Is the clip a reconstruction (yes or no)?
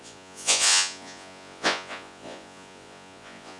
yes